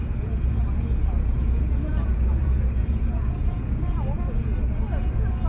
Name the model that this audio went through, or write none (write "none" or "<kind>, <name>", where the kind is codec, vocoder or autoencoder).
vocoder, Vocos